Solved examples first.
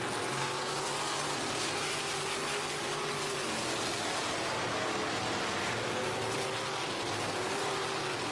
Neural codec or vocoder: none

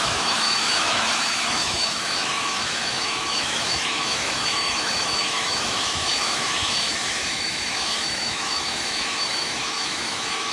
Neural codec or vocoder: autoencoder, DAC-VAE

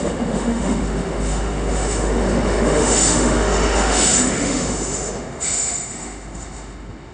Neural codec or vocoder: autoencoder, DAC-VAE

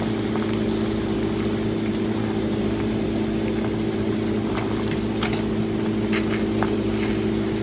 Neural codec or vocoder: none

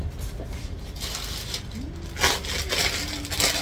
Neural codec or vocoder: none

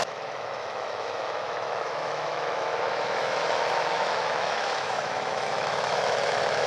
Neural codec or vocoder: autoencoder, DAC-VAE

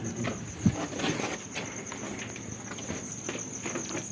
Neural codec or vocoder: none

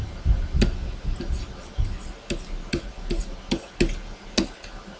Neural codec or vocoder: none